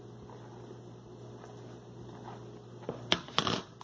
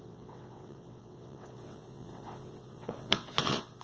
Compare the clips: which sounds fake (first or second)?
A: second